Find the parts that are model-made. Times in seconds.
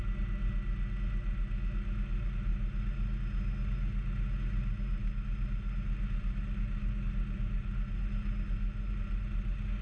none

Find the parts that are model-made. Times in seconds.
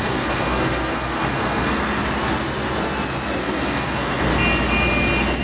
0.0-2.0 (codec, SNAC); 3.4-4.3